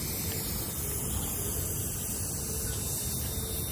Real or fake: real